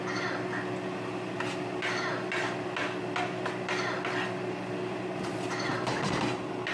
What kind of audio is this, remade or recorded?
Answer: recorded